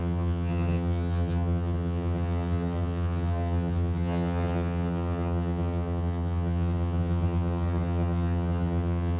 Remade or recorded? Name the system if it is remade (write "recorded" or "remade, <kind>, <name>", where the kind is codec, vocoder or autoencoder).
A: remade, vocoder, HiFi-GAN